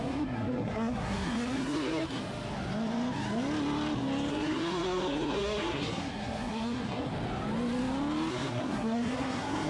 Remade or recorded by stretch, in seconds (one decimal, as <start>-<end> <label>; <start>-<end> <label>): 0.0-2.2 remade; 2.2-4.3 recorded; 4.3-7.1 remade; 7.1-8.3 recorded; 8.3-9.7 remade

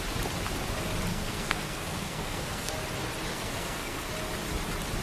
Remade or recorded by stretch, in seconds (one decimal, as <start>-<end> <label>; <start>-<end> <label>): 0.0-1.1 recorded; 1.1-2.7 remade; 2.7-3.3 recorded; 3.3-4.1 remade; 4.1-5.0 recorded